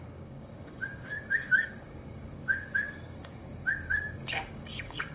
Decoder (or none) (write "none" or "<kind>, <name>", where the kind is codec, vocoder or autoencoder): codec, DAC